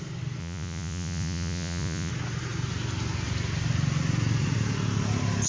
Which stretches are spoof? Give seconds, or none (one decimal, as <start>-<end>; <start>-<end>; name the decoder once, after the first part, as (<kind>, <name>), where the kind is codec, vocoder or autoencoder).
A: 0.4-2.1 (vocoder, Vocos)